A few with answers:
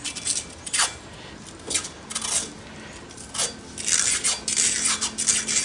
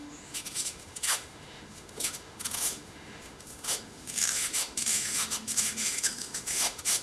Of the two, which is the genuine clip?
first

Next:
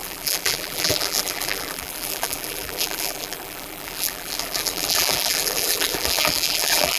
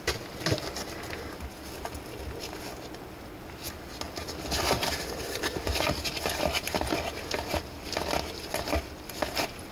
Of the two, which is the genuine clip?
second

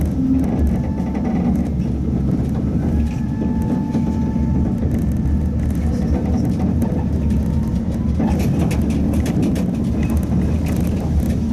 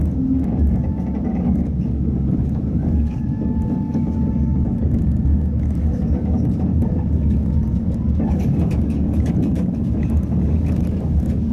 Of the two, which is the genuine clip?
first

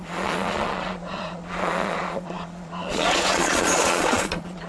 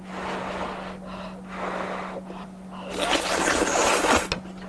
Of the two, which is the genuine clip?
second